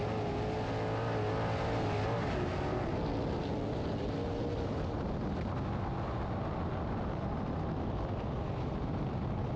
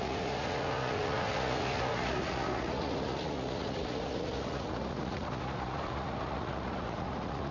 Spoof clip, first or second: second